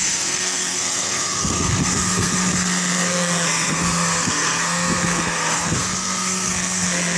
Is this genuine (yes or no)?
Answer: no